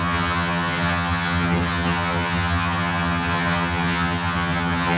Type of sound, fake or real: fake